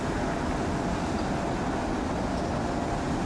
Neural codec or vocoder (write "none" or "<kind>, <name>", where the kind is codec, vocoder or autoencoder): none